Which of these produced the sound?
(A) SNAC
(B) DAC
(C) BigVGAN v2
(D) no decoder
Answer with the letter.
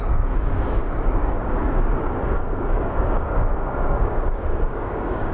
B